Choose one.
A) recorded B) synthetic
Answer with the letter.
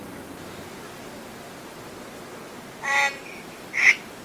A